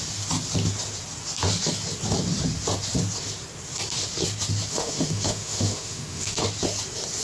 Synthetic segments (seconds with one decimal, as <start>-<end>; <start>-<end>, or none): 4.7-6.4